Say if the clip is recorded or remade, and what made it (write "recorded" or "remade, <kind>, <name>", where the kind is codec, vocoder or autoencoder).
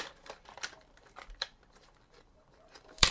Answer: remade, vocoder, BigVGAN v2